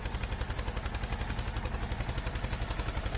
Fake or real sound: real